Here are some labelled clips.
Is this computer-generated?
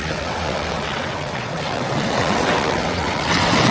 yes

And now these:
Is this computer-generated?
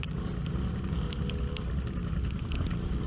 no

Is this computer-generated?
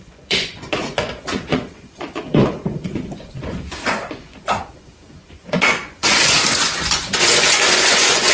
yes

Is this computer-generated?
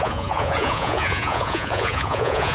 yes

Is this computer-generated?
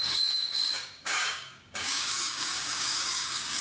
yes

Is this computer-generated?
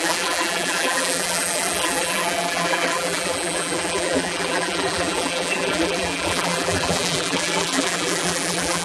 yes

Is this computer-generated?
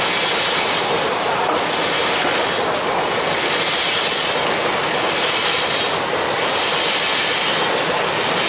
no